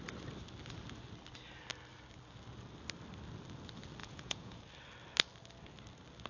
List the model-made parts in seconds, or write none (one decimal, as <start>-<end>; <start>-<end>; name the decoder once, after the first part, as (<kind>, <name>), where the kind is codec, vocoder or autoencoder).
4.0-4.6 (vocoder, Vocos)